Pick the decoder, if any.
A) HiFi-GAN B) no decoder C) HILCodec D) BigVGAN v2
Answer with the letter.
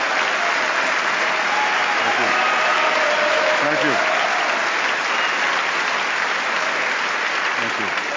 B